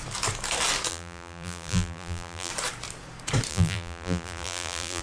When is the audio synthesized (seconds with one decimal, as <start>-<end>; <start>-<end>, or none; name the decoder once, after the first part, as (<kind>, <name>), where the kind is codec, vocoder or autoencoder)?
0.9-2.5 (vocoder, BigVGAN v2); 3.5-5.0